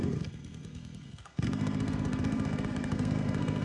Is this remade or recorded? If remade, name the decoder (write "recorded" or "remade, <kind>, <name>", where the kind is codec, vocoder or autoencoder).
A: remade, codec, SNAC